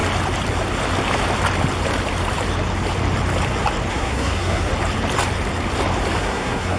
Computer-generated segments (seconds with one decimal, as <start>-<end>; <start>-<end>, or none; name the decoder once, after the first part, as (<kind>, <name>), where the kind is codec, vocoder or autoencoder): 3.9-4.7 (codec, SNAC); 6.2-6.8